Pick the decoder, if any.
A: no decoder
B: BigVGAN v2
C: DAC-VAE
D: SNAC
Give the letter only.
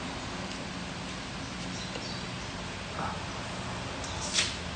A